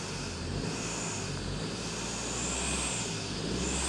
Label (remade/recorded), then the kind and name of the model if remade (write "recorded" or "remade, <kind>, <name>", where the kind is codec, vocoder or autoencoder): recorded